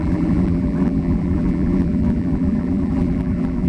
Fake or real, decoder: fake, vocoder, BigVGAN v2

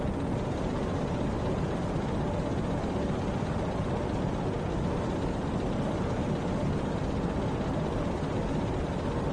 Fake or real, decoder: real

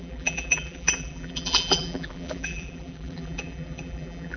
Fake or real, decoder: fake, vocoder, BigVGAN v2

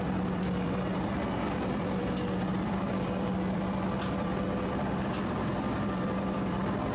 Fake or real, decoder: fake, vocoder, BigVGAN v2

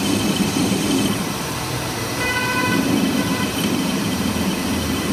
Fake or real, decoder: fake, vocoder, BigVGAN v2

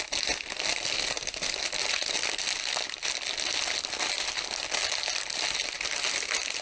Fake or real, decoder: fake, vocoder, BigVGAN v2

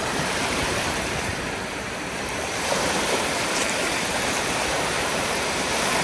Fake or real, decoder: fake, vocoder, BigVGAN v2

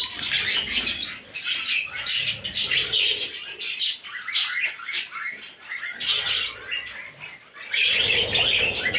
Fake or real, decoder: real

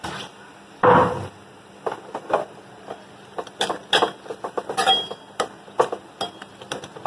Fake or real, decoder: real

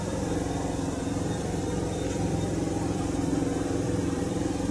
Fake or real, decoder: fake, vocoder, BigVGAN v2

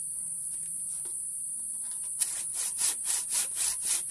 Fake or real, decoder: real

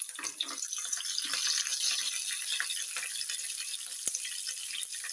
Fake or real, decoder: real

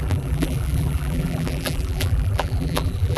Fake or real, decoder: fake, vocoder, BigVGAN v2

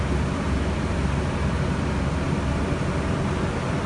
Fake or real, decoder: real